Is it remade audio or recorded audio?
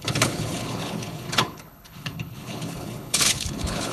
remade